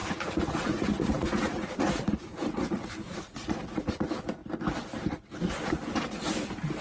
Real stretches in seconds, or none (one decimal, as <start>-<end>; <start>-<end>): 3.9-6.8